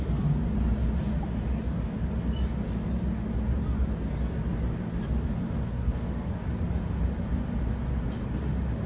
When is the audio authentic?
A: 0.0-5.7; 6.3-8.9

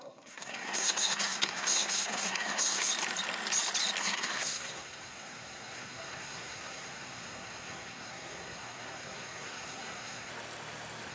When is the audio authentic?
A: 2.9-4.0; 10.3-11.1

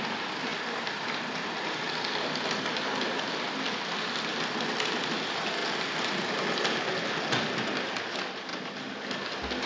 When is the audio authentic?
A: 0.0-9.7

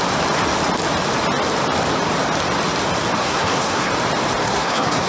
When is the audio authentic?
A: 0.0-3.2; 3.9-4.4

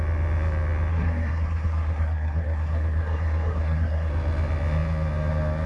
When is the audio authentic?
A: 0.0-0.9; 4.1-5.7

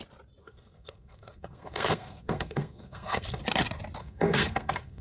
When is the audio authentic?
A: 0.0-0.4; 3.4-4.0

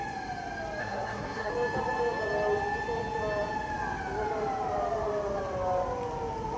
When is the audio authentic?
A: 0.0-0.8; 1.5-6.6